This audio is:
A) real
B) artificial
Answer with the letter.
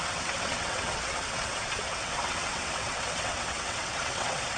B